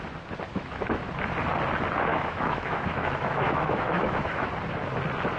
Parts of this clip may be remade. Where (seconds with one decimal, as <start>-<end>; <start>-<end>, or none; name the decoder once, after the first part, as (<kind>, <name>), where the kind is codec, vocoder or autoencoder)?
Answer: 0.5-1.1 (autoencoder, DAC-VAE); 2.1-4.5